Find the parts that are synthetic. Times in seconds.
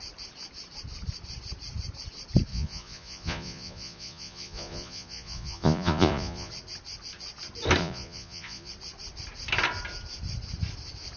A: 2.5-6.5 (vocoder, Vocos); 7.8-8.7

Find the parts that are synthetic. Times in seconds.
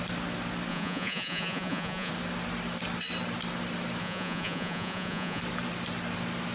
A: 0.7-2.1 (vocoder, Vocos); 4.0-5.4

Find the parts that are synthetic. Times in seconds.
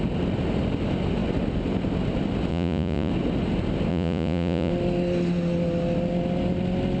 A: 2.5-3.1 (vocoder, Vocos); 3.9-4.7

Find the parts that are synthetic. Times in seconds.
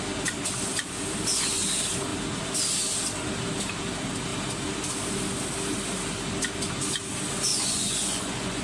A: 7.5-8.6 (vocoder, Vocos)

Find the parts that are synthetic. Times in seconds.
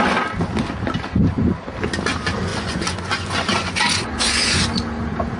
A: 2.5-4.6 (vocoder, Vocos)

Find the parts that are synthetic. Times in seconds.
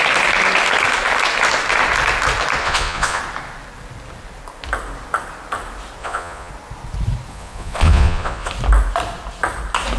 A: 2.6-3.2 (vocoder, Vocos); 6.0-6.5; 7.3-8.5